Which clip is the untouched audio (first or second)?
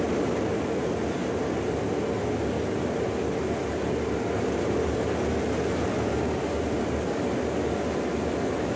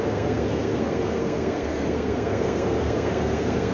first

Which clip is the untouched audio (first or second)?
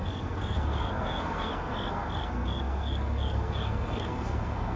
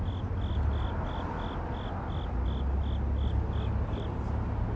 second